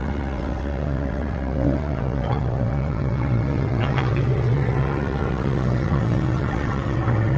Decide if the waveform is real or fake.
fake